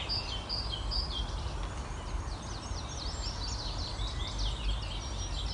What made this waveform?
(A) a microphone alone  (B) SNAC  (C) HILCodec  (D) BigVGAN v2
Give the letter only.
A